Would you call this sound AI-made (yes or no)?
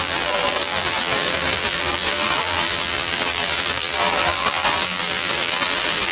yes